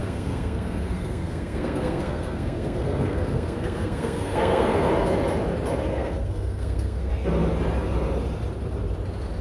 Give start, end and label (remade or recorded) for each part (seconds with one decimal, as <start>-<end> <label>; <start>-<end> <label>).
0.0-4.9 remade; 4.9-5.9 recorded; 5.9-7.1 remade; 7.1-9.4 recorded